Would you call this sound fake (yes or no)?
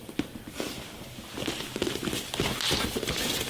no